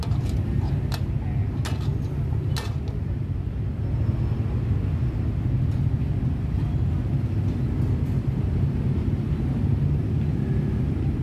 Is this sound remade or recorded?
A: recorded